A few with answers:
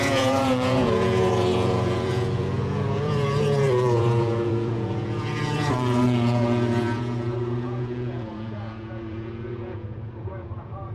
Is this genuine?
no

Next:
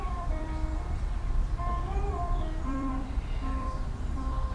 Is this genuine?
no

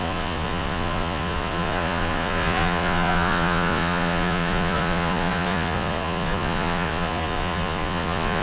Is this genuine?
no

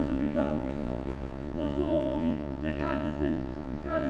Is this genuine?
no